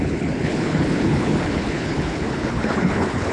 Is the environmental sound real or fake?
fake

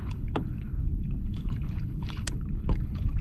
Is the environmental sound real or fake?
fake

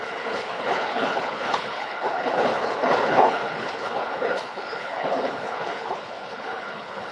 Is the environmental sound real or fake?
fake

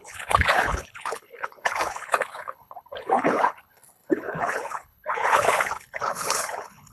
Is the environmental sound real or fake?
fake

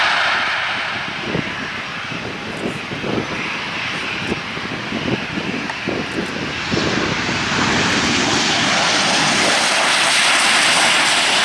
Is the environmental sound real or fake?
real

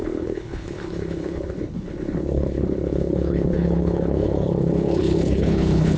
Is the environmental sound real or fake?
fake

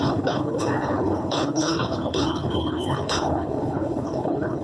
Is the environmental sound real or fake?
fake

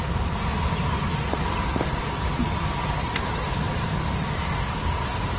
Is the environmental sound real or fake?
real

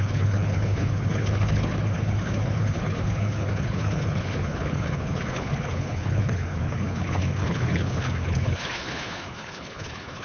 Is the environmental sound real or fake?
fake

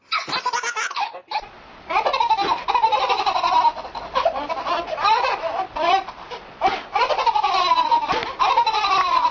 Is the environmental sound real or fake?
real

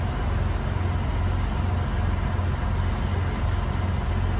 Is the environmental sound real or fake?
real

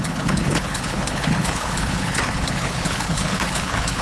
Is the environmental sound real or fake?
fake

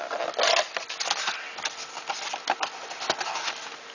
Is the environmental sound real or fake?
real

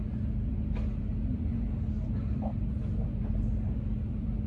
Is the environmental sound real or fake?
real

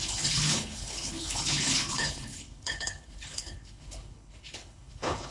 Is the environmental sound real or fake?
fake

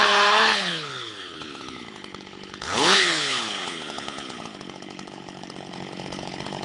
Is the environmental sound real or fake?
fake